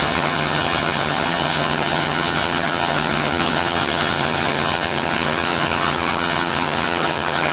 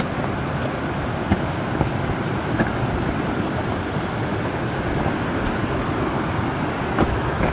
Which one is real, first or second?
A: second